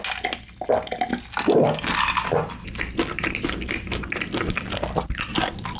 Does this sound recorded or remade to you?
recorded